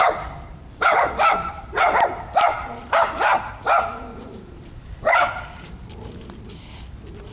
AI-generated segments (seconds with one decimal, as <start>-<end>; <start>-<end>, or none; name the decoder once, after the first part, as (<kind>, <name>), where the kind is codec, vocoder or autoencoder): 0.5-3.5 (vocoder, BigVGAN v2); 4.1-6.5